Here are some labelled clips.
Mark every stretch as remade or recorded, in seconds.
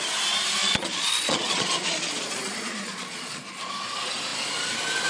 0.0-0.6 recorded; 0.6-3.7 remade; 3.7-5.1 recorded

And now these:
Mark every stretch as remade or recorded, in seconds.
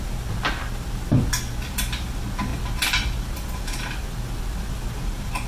0.0-5.5 recorded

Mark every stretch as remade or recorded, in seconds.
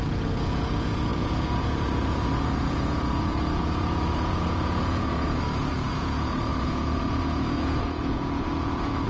0.0-9.1 remade